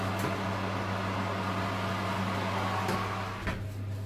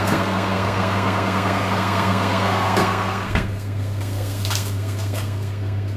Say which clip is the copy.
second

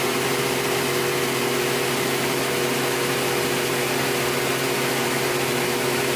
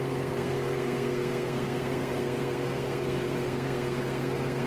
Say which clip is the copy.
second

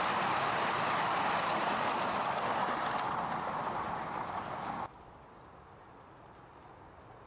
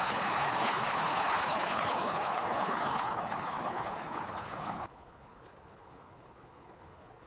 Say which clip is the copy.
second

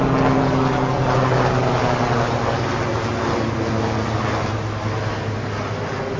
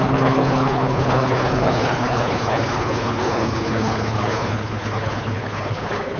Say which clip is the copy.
second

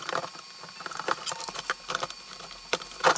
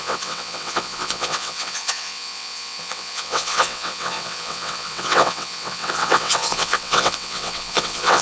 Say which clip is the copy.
second